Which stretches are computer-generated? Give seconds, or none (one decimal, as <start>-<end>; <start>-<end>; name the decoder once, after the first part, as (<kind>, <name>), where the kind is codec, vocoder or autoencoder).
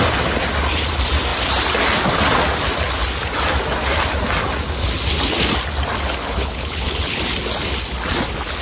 6.2-7.2 (codec, HILCodec)